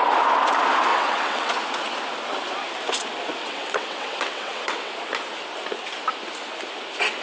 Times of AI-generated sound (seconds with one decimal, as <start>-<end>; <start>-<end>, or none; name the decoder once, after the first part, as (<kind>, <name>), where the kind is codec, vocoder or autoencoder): 0.9-1.5 (vocoder, WaveNeXt); 3.4-4.9